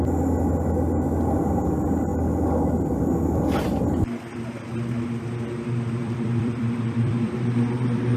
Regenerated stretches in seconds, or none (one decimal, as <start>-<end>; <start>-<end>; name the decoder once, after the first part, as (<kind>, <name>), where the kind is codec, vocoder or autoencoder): 6.0-7.4 (vocoder, BigVGAN v2)